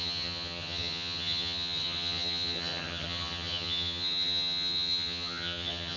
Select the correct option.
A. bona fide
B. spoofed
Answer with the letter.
B